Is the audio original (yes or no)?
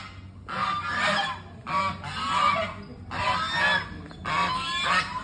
yes